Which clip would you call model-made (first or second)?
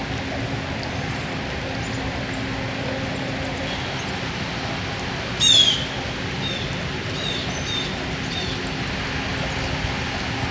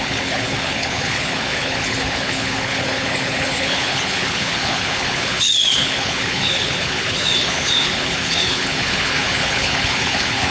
second